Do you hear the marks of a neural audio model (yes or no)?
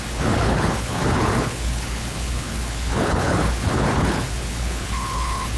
yes